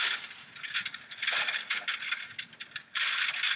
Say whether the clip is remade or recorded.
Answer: recorded